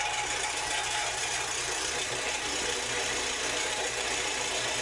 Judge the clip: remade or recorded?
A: remade